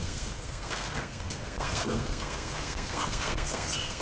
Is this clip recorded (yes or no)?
no